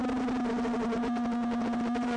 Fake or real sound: real